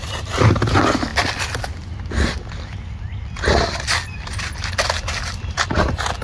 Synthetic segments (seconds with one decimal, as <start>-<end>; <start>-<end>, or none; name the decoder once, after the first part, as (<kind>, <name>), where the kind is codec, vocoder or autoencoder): none